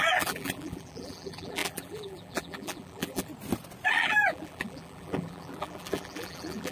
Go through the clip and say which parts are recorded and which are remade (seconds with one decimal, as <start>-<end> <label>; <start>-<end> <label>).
0.0-3.3 remade; 3.3-3.9 recorded; 3.9-6.7 remade

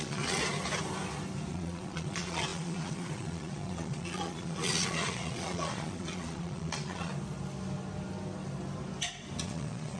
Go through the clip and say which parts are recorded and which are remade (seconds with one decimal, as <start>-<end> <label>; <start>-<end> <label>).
0.0-0.4 remade; 0.4-1.5 recorded; 1.5-7.1 remade; 7.1-9.4 recorded; 9.4-10.0 remade

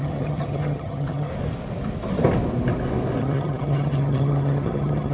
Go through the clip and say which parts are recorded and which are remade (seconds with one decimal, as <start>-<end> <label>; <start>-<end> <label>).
0.0-1.3 remade; 1.3-3.2 recorded; 3.2-5.1 remade

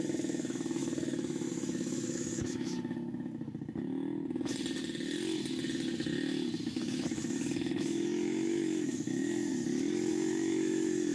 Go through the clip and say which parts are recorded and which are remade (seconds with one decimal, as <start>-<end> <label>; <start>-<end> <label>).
0.0-2.7 remade; 2.7-6.6 recorded; 6.6-9.5 remade; 9.5-10.1 recorded; 10.1-11.1 remade

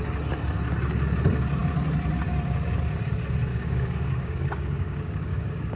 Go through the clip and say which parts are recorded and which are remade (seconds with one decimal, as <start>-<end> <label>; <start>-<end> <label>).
0.0-3.5 recorded; 3.5-5.8 remade

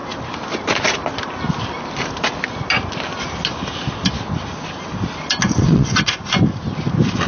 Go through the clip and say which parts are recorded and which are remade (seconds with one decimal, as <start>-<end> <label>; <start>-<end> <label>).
0.0-5.4 recorded; 5.4-6.1 remade; 6.1-7.3 recorded